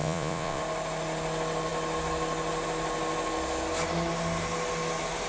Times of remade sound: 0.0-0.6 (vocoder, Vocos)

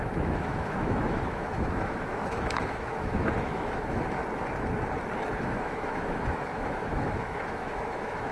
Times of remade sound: 0.0-4.2 (autoencoder, DAC-VAE); 5.4-8.3

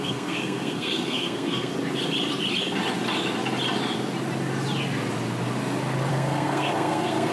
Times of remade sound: 0.0-1.7 (codec, SNAC); 6.1-7.3

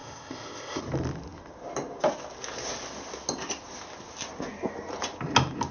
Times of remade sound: 0.0-0.8 (codec, ZipCodec)

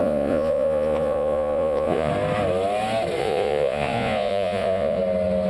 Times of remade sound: 0.0-2.1 (vocoder, Vocos); 3.2-5.0

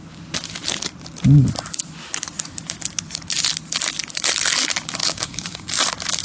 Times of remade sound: 5.0-5.7 (codec, DAC)